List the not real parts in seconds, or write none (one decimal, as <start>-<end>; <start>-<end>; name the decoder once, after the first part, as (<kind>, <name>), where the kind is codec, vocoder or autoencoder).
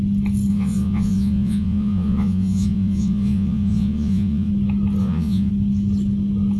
0.5-4.5 (vocoder, Vocos); 5.0-5.5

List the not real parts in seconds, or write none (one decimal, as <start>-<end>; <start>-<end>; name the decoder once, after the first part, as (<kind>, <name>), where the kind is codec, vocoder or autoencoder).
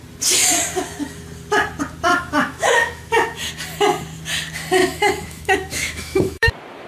2.1-3.5 (autoencoder, DAC-VAE); 4.8-6.5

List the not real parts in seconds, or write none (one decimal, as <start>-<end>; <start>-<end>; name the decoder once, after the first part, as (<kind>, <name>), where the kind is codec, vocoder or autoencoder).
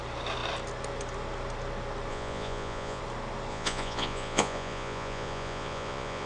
2.1-3.0 (vocoder, Vocos); 3.5-6.3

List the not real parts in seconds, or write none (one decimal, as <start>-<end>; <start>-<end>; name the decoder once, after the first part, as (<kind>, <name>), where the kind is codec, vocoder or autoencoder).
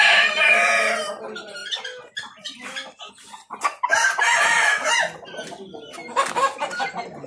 1.6-3.1 (vocoder, BigVGAN v2); 3.9-4.5